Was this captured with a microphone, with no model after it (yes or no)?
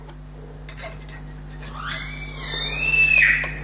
yes